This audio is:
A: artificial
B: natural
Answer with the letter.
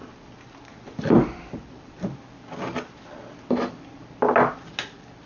B